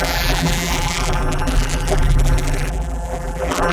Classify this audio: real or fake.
fake